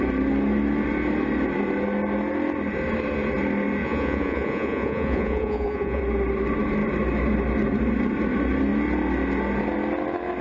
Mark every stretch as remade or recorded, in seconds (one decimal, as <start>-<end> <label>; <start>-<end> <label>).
0.0-3.8 recorded; 3.8-6.0 remade; 6.0-10.4 recorded